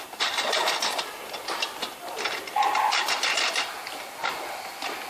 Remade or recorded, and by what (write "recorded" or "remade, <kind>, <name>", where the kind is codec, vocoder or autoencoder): recorded